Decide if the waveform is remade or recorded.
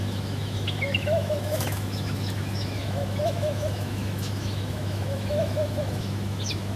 remade